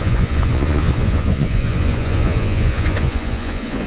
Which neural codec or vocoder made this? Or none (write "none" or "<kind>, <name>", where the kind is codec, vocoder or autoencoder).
vocoder, Vocos